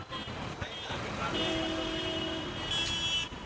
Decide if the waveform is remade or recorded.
recorded